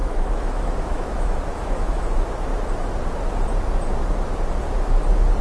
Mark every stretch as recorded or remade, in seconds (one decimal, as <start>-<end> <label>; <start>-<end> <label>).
0.0-2.5 remade; 2.5-5.4 recorded